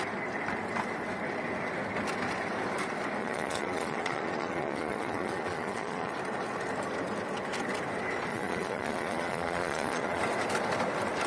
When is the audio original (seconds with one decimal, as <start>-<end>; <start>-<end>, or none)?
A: 0.0-3.2; 6.1-8.3; 10.2-11.3